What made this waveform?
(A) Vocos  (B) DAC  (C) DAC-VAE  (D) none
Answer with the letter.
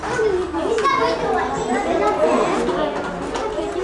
D